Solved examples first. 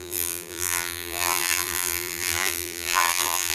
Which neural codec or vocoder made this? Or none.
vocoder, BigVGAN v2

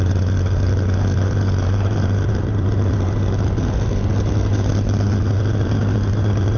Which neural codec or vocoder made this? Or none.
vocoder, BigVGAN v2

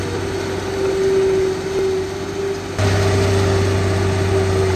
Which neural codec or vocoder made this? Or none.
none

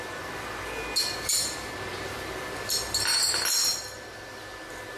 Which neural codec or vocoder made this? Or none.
none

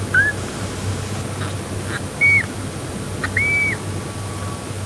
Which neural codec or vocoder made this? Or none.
none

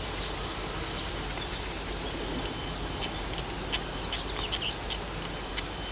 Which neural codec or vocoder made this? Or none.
none